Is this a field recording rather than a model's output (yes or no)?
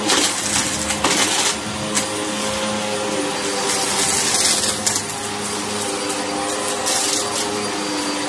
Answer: yes